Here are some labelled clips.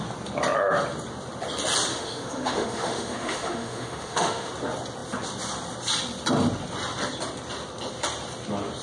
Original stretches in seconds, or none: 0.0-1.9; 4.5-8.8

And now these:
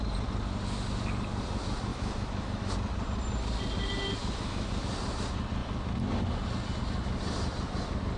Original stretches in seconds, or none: 0.0-1.9; 2.7-4.2; 4.9-8.2

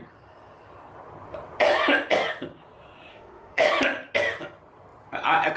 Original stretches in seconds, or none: 0.0-3.1; 3.7-5.6

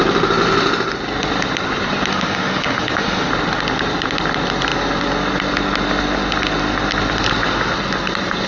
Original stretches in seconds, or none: 0.0-2.1; 3.3-8.5

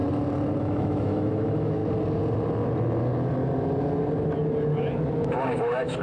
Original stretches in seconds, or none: 0.0-0.6; 1.8-5.3

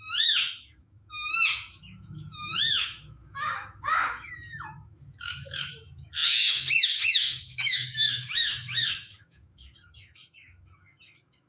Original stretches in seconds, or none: none

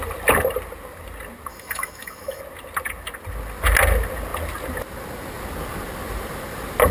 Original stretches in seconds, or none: 0.0-1.5; 2.4-6.9